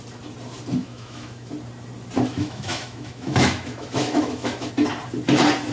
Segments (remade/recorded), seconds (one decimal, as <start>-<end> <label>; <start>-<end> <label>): 0.0-0.8 recorded; 0.8-1.5 remade; 1.5-2.3 recorded; 2.3-4.7 remade; 4.7-5.7 recorded

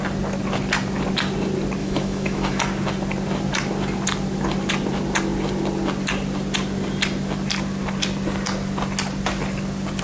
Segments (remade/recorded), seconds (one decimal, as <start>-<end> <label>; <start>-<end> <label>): 0.0-1.8 recorded; 1.8-2.6 remade; 2.6-10.0 recorded

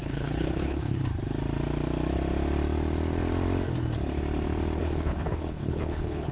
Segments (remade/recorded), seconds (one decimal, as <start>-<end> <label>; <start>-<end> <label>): 0.0-1.0 remade; 1.0-4.8 recorded; 4.8-6.3 remade

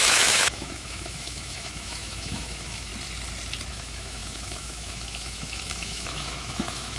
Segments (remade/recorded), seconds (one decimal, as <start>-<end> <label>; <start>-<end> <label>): 0.0-2.9 remade; 2.9-3.7 recorded; 3.7-7.0 remade